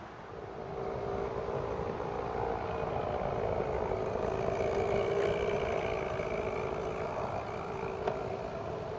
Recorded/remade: recorded